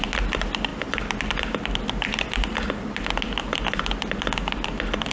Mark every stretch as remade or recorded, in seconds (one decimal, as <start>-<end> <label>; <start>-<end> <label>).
0.0-5.1 recorded